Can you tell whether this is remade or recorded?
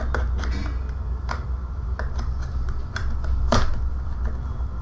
recorded